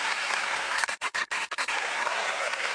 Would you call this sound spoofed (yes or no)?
yes